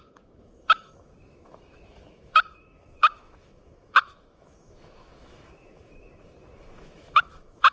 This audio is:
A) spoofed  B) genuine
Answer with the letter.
A